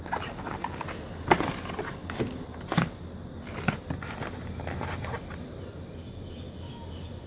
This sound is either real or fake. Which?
real